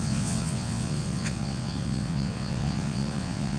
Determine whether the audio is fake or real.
fake